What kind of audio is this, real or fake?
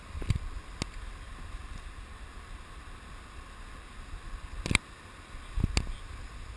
real